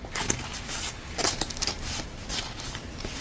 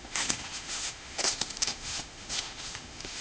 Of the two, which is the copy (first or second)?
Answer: second